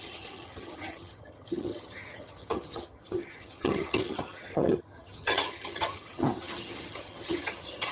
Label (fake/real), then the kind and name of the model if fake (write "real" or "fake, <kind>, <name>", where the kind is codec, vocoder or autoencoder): fake, vocoder, HiFi-GAN